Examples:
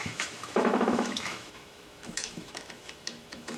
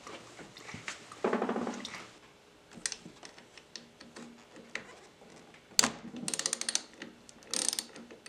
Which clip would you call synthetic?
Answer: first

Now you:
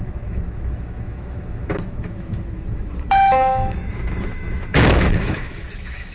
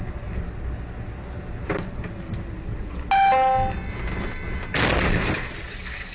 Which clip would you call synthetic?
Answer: first